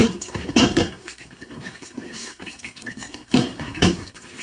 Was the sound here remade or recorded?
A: remade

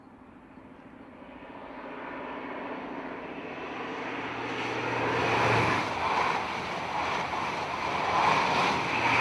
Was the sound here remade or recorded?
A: recorded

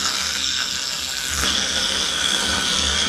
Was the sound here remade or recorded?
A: remade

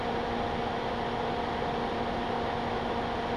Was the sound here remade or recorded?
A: recorded